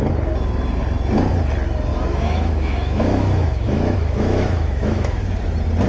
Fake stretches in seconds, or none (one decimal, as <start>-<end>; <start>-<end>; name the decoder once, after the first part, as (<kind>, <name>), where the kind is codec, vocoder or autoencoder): 1.9-5.4 (autoencoder, DAC-VAE)